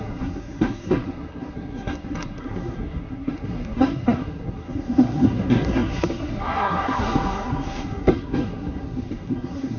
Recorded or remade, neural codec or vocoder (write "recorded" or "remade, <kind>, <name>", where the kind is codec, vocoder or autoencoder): remade, codec, SNAC